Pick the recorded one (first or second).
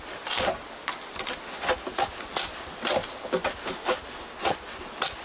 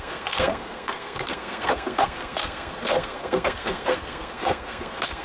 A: first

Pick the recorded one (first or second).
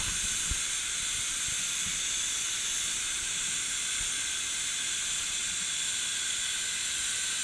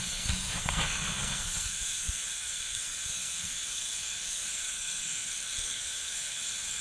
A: first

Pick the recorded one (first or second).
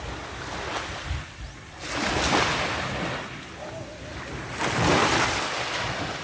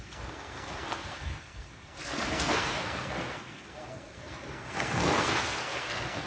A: first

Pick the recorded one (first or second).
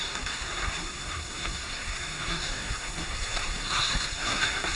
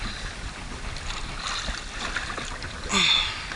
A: second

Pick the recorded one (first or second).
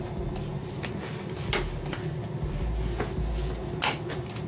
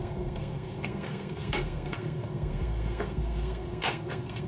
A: first